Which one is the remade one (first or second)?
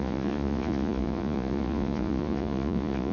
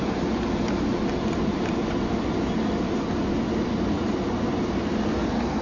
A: first